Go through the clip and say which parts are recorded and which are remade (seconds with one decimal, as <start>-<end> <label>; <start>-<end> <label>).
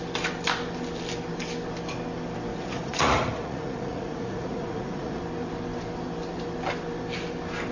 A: 0.0-2.5 recorded; 2.5-5.2 remade; 5.2-7.7 recorded